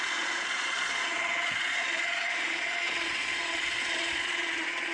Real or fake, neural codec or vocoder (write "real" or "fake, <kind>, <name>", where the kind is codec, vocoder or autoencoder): fake, vocoder, Vocos